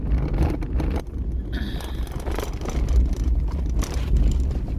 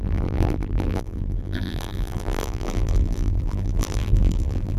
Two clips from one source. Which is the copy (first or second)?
second